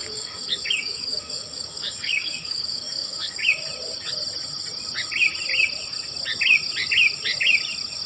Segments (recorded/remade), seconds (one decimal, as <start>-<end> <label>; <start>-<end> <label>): 0.0-3.5 remade; 3.5-8.1 recorded